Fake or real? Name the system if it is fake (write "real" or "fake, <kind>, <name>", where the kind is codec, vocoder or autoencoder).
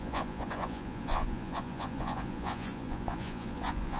fake, vocoder, Vocos